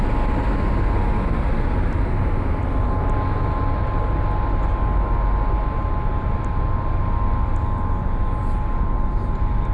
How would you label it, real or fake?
real